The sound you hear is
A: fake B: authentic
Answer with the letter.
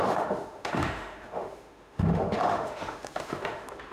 A